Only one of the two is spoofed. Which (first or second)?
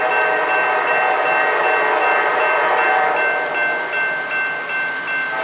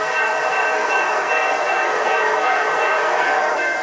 second